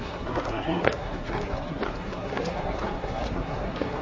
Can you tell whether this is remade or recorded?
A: remade